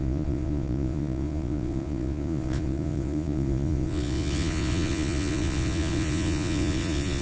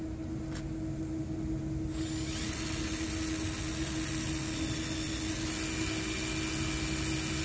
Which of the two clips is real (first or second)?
second